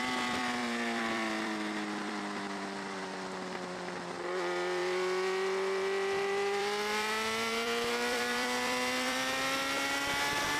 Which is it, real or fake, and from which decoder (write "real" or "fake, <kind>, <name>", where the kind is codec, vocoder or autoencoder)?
fake, vocoder, BigVGAN v2